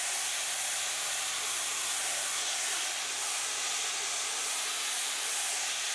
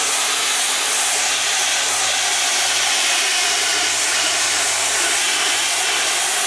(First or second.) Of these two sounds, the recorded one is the second